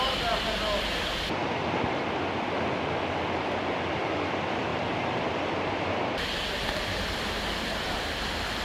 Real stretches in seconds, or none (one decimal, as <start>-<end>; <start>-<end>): 0.0-4.7; 5.3-8.6